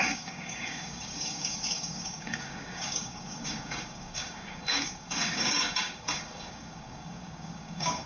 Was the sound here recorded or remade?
remade